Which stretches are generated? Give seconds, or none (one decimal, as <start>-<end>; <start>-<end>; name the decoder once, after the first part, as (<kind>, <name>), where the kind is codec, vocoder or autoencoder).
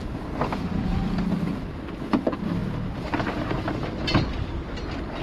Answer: 0.8-1.7 (vocoder, BigVGAN v2)